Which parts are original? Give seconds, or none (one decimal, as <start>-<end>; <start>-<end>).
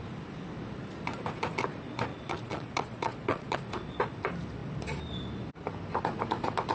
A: 0.0-2.1; 3.7-6.7